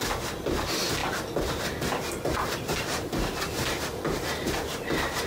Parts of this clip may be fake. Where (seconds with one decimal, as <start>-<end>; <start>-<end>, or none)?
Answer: none